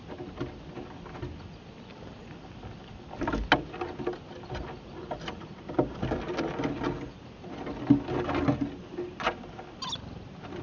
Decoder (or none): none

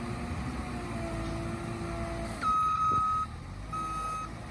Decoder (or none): none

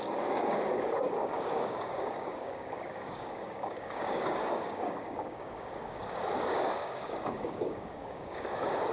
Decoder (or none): codec, DAC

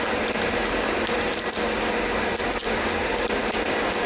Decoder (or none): none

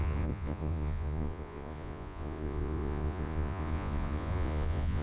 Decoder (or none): vocoder, Vocos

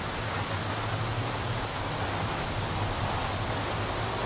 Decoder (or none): none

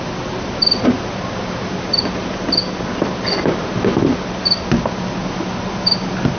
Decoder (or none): none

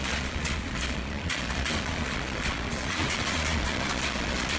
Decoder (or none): vocoder, Vocos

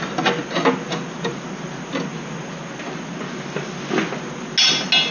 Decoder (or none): none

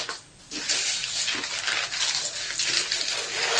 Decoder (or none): none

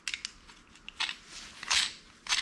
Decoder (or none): none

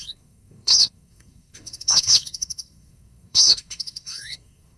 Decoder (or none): codec, SNAC